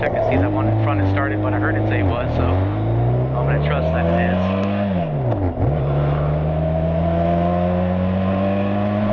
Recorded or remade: recorded